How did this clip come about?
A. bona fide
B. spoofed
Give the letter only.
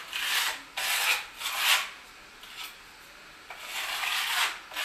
A